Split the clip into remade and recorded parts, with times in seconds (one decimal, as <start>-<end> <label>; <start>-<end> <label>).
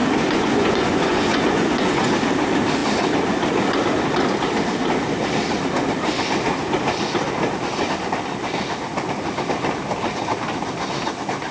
0.0-2.1 remade; 2.1-11.5 recorded